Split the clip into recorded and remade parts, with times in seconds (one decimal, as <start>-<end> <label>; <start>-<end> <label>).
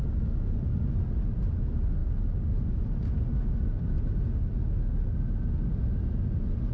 0.0-6.7 recorded